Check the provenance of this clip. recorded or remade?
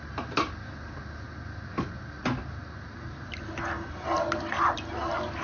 recorded